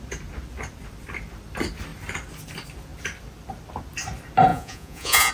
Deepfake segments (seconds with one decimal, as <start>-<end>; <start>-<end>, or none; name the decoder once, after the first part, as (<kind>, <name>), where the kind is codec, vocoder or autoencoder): 4.5-5.3 (vocoder, Vocos)